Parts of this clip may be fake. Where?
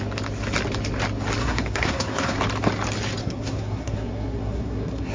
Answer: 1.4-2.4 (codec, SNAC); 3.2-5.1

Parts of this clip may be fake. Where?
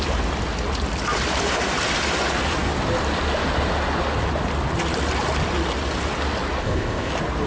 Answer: 6.6-7.1 (codec, ZipCodec)